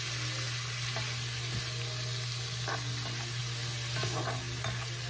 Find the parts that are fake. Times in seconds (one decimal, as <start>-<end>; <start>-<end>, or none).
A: none